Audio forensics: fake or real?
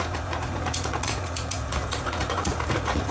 fake